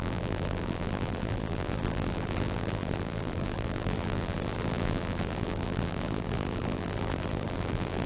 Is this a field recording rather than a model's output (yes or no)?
no